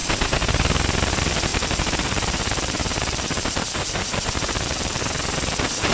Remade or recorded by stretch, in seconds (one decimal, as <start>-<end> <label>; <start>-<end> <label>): 0.0-1.5 recorded; 1.5-5.0 remade; 5.0-5.9 recorded